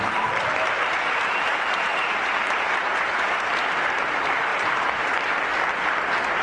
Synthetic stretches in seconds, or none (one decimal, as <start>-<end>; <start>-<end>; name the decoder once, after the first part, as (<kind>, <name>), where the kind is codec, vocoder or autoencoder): 1.5-3.6 (vocoder, BigVGAN v2); 4.5-5.3